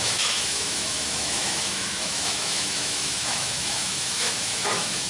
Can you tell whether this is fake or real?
fake